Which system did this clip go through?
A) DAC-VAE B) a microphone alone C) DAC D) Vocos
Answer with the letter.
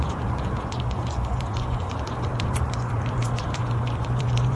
D